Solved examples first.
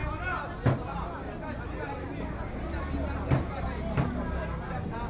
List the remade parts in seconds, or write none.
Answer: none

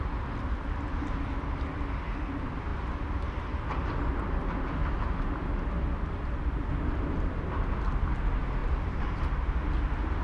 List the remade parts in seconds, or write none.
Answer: 8.6-9.2 (vocoder, BigVGAN v2)